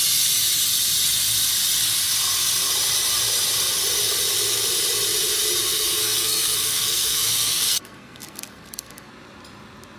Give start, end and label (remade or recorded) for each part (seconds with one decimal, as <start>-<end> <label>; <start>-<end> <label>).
0.0-5.6 recorded; 5.6-9.1 remade; 9.1-10.0 recorded